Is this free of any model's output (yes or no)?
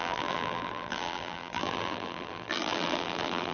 no